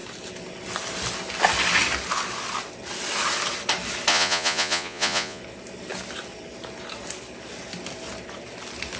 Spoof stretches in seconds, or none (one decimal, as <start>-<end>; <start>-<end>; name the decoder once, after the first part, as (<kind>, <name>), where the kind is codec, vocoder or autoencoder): 4.1-5.4 (vocoder, Vocos)